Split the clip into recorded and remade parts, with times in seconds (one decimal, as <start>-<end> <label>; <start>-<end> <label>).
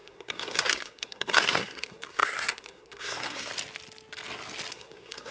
0.0-3.5 remade; 3.5-4.7 recorded; 4.7-5.3 remade